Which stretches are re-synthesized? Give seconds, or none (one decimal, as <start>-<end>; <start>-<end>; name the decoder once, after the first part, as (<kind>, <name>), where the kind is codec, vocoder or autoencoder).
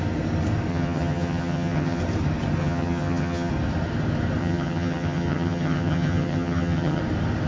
0.7-2.0 (vocoder, HiFi-GAN); 2.6-3.5; 4.4-7.0